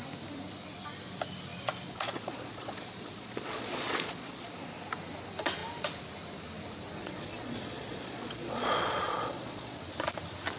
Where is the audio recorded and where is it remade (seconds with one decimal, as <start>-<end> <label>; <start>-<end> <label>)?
0.0-1.5 recorded; 1.5-4.5 remade; 4.5-7.0 recorded; 7.0-9.8 remade; 9.8-10.6 recorded